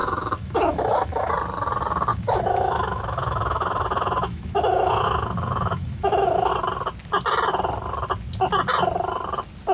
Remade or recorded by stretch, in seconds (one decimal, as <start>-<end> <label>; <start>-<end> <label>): 0.0-1.3 remade; 1.3-2.1 recorded; 2.1-6.5 remade; 6.5-9.7 recorded

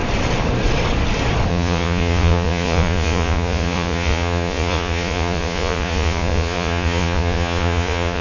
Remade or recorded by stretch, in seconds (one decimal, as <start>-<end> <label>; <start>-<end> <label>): 0.0-1.5 recorded; 1.5-8.2 remade